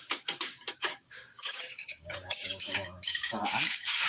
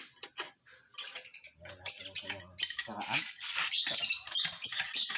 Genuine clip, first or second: second